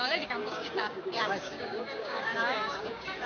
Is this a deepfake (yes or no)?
yes